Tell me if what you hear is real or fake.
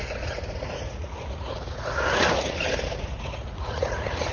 fake